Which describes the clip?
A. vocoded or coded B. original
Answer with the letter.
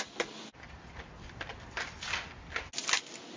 B